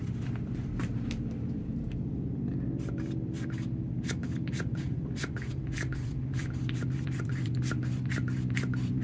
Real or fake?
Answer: fake